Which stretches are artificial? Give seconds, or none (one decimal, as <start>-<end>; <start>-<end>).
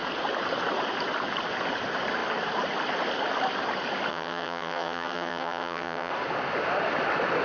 4.1-6.1